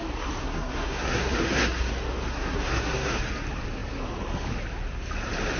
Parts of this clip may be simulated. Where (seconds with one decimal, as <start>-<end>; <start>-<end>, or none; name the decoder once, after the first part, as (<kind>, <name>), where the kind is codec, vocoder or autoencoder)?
0.4-1.9 (codec, SNAC); 2.3-3.2